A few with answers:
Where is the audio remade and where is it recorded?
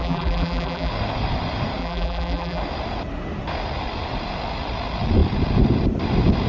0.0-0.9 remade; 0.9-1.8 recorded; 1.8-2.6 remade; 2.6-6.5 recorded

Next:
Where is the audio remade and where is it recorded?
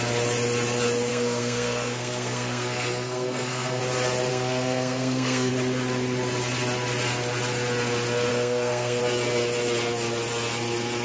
0.0-1.1 recorded; 1.1-3.8 remade; 3.8-4.3 recorded; 4.3-5.5 remade; 5.5-8.3 recorded; 8.3-9.0 remade; 9.0-11.0 recorded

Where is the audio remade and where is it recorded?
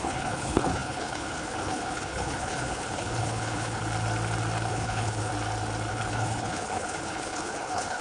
0.0-3.8 remade; 3.8-4.7 recorded; 4.7-5.3 remade; 5.3-5.9 recorded; 5.9-8.0 remade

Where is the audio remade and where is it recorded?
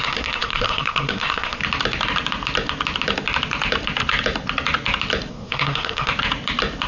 0.0-1.6 remade; 1.6-5.3 recorded; 5.3-6.1 remade; 6.1-6.9 recorded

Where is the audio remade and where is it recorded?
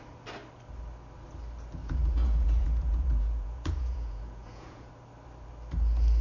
0.0-1.8 recorded; 1.8-4.9 remade; 4.9-6.2 recorded